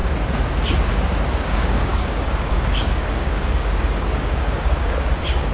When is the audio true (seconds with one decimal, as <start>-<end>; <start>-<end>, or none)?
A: 0.0-1.3